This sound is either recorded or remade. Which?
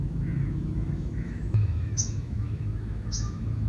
remade